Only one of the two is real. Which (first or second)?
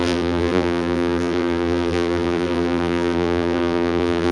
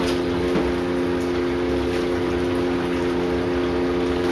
second